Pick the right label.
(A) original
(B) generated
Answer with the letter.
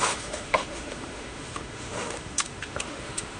B